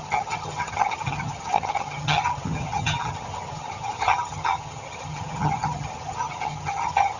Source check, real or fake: fake